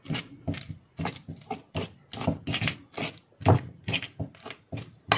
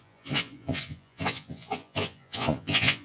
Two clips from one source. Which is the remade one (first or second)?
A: second